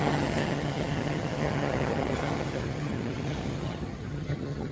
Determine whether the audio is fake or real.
fake